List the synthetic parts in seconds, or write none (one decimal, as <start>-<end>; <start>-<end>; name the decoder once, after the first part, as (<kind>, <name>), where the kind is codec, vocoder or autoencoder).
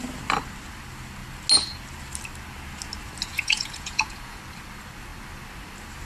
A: 3.3-4.4 (vocoder, Vocos)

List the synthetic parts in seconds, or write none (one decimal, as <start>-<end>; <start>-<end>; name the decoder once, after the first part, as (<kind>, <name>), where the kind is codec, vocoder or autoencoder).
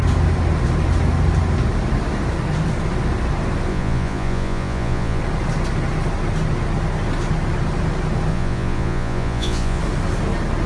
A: 3.7-5.2 (vocoder, Vocos); 8.3-9.8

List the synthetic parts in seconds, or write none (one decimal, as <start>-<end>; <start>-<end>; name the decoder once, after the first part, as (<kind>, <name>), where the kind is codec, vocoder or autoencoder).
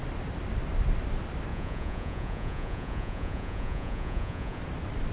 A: 1.5-4.6 (vocoder, Vocos)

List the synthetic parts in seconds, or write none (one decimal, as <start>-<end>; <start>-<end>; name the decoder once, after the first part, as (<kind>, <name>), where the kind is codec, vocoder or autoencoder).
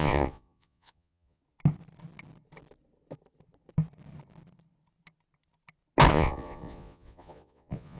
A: 0.0-1.4 (vocoder, Vocos); 6.1-8.0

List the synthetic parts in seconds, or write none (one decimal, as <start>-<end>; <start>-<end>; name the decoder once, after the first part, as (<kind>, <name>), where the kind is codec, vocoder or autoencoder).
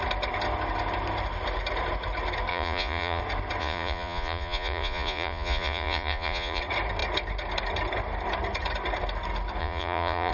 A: 2.5-3.2 (vocoder, Vocos); 3.6-6.6; 9.6-10.3